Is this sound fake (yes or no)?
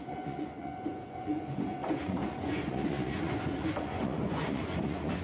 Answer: yes